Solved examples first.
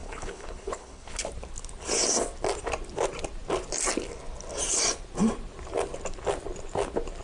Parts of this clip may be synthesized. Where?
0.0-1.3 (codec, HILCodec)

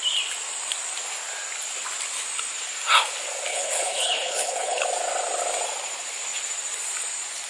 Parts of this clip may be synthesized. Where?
3.5-4.8 (codec, HILCodec)

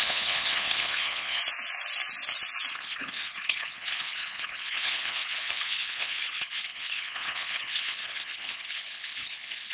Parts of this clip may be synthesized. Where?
0.0-1.4 (codec, HILCodec); 2.7-9.7

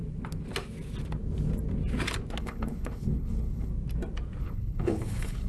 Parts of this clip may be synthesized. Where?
2.4-3.7 (codec, HILCodec); 4.4-5.5

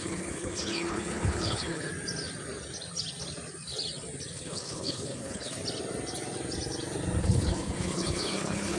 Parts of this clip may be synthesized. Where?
0.0-1.9 (codec, HILCodec); 4.3-5.6; 7.2-8.8

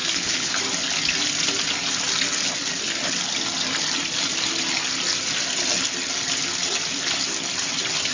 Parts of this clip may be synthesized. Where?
0.0-0.6 (codec, HILCodec)